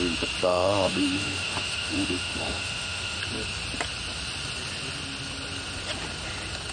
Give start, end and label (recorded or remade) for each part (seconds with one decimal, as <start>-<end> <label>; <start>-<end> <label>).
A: 0.0-0.4 recorded; 0.4-3.2 remade; 3.2-6.7 recorded